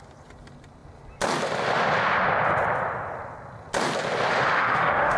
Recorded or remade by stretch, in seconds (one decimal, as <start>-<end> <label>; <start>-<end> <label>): 0.0-4.3 recorded; 4.3-5.2 remade